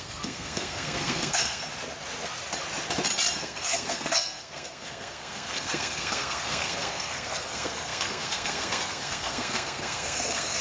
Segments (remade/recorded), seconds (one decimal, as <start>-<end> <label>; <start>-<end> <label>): 0.0-1.6 remade; 1.6-3.4 recorded; 3.4-10.6 remade